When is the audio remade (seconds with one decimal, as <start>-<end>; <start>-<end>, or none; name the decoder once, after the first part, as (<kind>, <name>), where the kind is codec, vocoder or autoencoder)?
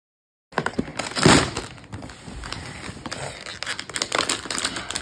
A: none